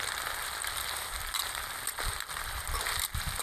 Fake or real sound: fake